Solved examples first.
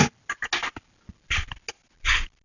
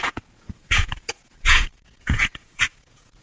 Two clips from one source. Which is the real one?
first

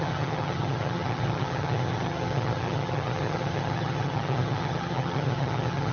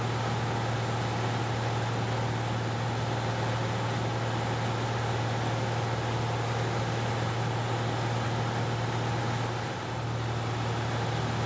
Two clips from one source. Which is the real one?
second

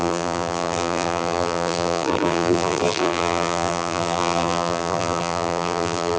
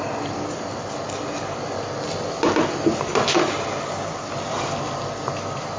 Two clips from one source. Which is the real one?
second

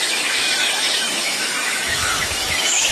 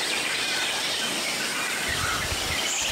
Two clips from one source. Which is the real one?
second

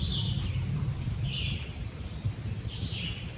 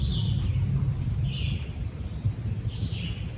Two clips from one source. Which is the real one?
second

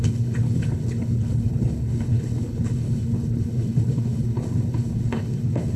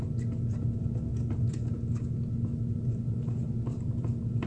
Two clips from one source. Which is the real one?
second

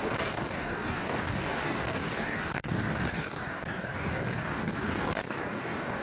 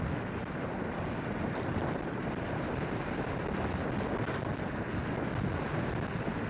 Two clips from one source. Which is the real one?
second